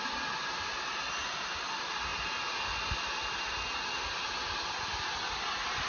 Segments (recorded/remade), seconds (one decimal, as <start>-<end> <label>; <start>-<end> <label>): 0.0-5.9 recorded